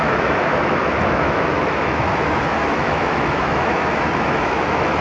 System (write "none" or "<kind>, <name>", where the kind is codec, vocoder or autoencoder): autoencoder, DAC-VAE